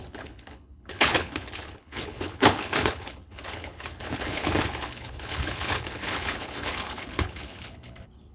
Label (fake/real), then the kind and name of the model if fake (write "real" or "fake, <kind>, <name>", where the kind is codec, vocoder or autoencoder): fake, codec, HILCodec